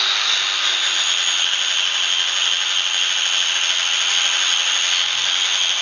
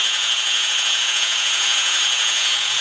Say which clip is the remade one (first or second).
second